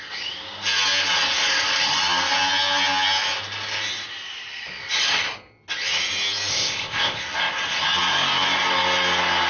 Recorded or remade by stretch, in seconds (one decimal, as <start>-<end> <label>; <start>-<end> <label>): 0.0-6.5 recorded; 6.5-7.2 remade; 7.2-9.5 recorded